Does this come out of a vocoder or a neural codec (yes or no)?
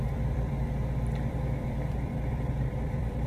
yes